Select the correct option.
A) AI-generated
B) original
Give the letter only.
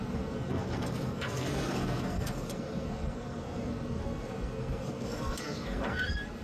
A